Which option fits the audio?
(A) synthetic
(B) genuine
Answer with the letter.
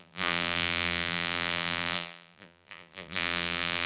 A